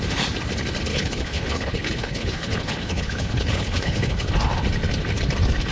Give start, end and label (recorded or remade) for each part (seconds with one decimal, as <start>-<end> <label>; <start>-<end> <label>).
0.0-0.9 recorded; 0.9-4.3 remade; 4.3-5.7 recorded